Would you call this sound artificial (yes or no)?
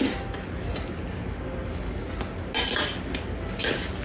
no